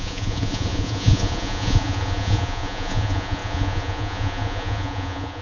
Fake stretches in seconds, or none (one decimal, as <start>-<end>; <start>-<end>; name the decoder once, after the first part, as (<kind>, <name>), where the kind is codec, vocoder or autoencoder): 0.0-5.4 (vocoder, Vocos)